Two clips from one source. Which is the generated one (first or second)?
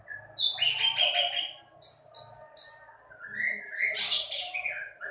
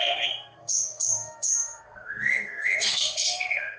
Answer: second